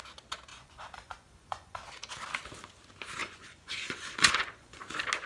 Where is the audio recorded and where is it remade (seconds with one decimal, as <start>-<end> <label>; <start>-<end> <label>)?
0.0-0.5 recorded; 0.5-1.8 remade; 1.8-3.2 recorded; 3.2-4.8 remade; 4.8-5.3 recorded